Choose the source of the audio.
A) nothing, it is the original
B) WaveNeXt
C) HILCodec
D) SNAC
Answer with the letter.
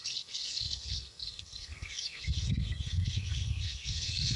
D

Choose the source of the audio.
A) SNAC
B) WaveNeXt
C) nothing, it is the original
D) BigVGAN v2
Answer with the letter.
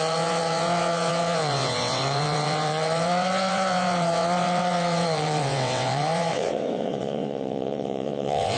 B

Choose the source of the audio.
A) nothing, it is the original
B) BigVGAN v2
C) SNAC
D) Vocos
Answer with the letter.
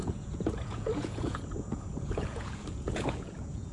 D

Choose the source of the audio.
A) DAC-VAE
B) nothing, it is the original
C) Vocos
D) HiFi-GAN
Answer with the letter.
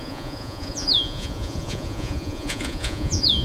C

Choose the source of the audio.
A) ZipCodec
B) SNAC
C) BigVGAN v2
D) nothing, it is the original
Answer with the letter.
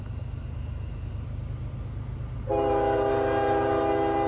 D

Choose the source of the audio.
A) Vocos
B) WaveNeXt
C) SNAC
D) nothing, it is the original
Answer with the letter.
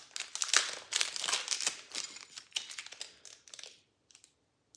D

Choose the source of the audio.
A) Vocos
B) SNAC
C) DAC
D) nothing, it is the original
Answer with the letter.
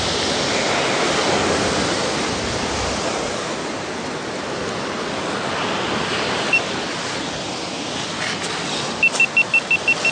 D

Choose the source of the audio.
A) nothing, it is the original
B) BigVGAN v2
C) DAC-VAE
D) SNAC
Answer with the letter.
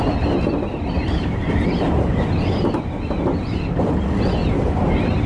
A